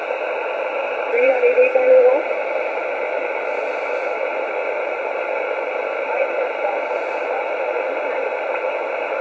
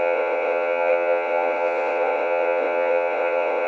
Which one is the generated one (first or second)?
second